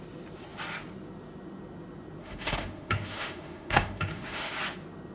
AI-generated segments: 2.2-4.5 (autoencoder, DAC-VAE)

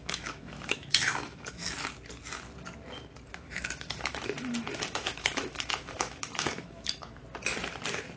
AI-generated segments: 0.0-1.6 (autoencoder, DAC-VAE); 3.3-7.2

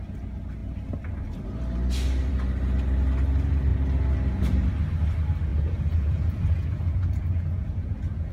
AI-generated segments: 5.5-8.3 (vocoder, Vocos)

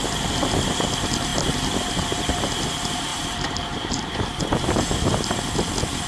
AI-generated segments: 3.1-5.2 (vocoder, BigVGAN v2)

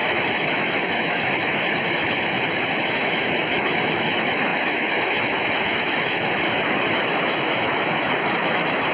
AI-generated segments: 0.0-8.9 (autoencoder, DAC-VAE)

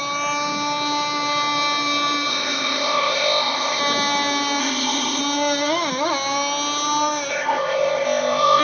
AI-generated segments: 2.3-3.8 (codec, ZipCodec); 4.6-5.2; 7.3-8.6

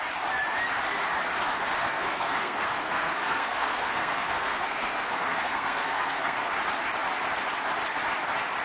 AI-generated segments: 1.8-6.5 (codec, SNAC)

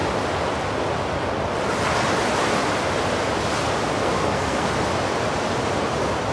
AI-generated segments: 4.0-4.7 (codec, SNAC)